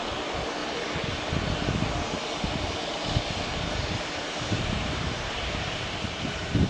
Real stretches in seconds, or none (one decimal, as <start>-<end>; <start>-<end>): 0.6-3.6